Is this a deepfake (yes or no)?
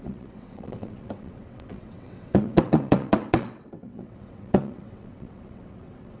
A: yes